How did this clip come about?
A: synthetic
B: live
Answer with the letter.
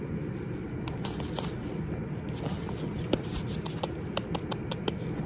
B